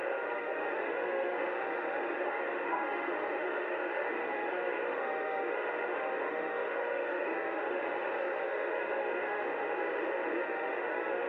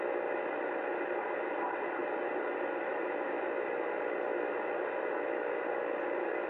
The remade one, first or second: first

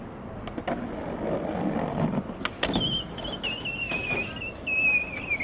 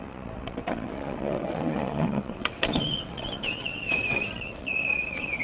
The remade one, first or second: second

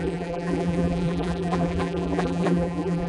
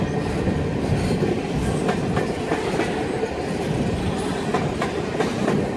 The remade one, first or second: first